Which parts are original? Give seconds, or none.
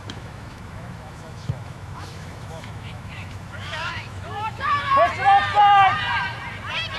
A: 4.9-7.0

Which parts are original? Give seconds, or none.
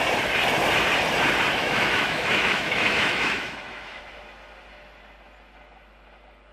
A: 0.0-1.6; 4.0-6.5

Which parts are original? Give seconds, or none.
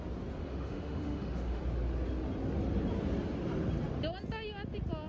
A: 0.0-0.4; 1.6-5.1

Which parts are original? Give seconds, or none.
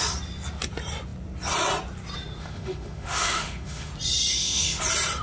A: 0.0-2.4; 3.9-4.3; 4.8-5.2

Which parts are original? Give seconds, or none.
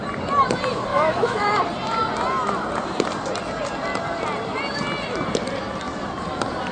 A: 0.0-0.9; 1.5-6.7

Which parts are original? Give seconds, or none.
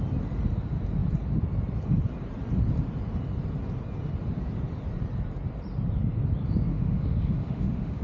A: 0.0-6.7